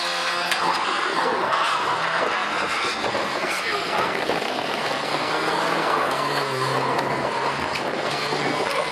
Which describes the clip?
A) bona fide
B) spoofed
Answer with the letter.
B